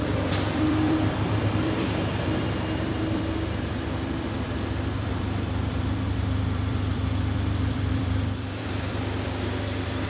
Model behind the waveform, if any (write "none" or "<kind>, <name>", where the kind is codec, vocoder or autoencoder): vocoder, BigVGAN v2